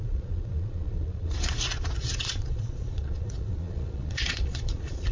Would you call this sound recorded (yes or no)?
no